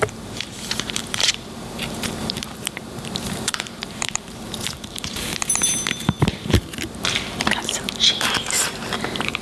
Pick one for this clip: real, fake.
fake